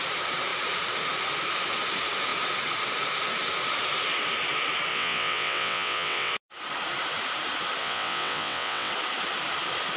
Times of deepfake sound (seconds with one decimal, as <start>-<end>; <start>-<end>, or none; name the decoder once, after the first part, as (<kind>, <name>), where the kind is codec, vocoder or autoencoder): 4.9-6.3 (vocoder, WaveNeXt); 7.8-8.9